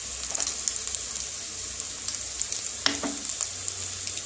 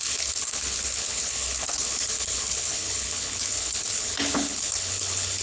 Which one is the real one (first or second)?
first